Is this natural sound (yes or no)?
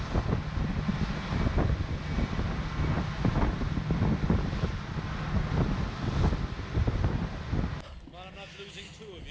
yes